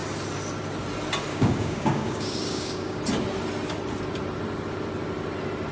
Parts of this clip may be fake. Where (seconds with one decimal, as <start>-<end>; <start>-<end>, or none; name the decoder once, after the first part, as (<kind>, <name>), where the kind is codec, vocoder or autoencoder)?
1.3-3.0 (codec, DAC)